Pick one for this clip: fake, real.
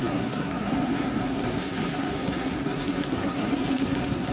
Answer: fake